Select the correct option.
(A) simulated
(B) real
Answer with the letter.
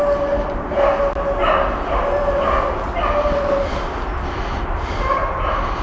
B